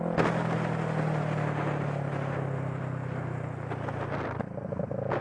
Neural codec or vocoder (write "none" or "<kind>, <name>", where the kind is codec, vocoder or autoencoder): none